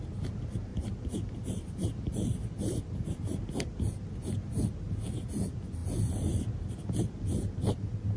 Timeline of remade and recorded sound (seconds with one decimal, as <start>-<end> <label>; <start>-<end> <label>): 0.0-0.7 recorded; 0.7-3.4 remade; 3.4-8.2 recorded